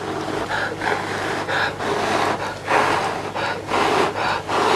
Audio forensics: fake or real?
real